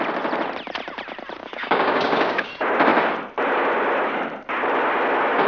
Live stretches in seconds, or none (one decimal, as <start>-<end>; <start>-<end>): 0.0-1.4; 2.5-5.5